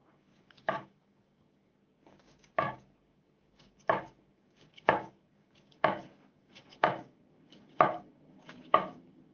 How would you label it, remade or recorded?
remade